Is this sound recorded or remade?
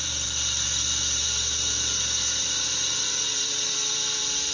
remade